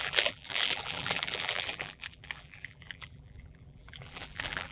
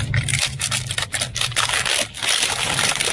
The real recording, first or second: second